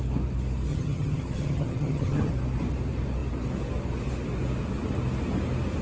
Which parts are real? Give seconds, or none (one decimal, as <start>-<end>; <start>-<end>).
0.0-0.7; 2.3-5.8